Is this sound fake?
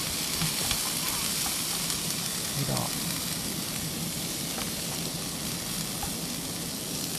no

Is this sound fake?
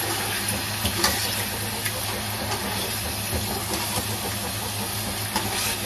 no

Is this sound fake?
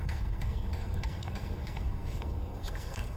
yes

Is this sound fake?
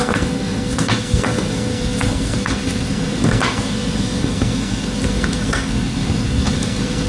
yes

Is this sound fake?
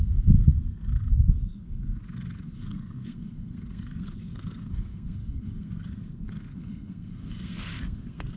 yes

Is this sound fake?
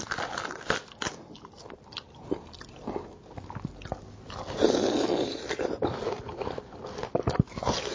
no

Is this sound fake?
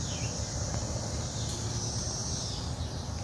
no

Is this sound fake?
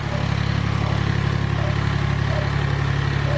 no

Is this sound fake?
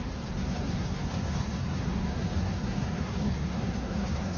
yes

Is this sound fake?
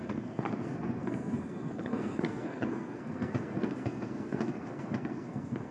yes